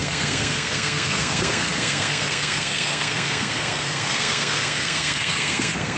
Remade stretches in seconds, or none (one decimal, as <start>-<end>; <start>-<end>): 0.0-6.0

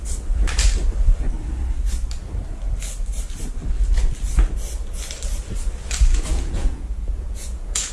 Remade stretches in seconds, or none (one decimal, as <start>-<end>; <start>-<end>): 6.3-7.9

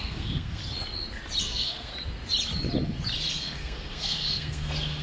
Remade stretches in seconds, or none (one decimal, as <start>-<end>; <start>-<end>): 0.0-0.6; 1.4-1.9; 3.3-5.0

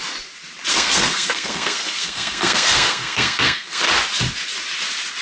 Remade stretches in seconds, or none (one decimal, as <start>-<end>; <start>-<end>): 0.7-3.8

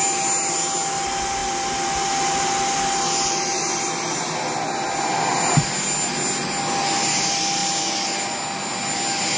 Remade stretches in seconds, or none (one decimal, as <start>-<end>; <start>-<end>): none